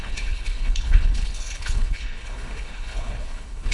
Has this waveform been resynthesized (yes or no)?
yes